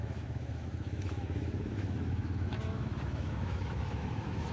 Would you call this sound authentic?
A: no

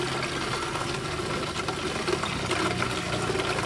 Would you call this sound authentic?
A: yes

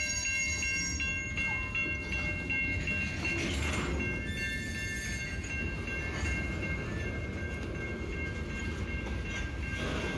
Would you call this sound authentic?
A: yes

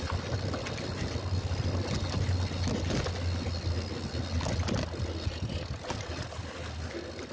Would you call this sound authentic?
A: yes